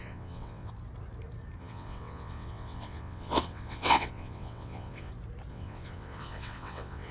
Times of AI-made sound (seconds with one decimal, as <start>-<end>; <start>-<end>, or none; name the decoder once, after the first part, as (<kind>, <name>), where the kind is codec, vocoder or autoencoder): 0.0-0.7 (vocoder, WaveNeXt); 1.6-5.1; 5.5-7.1